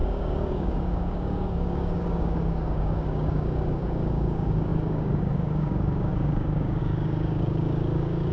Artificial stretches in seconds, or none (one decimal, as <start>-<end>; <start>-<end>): 0.0-8.3